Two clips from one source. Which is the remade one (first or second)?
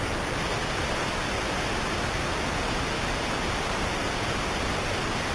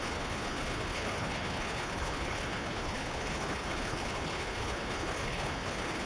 second